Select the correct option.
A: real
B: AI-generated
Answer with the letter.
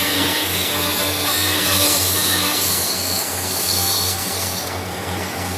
B